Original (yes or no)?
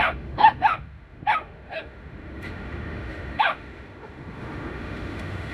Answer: no